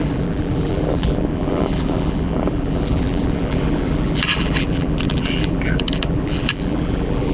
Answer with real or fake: fake